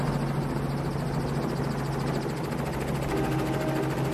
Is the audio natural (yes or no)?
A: yes